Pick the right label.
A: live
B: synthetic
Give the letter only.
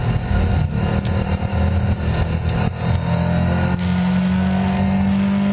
A